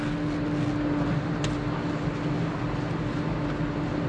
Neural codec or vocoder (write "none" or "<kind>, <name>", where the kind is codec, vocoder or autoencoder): none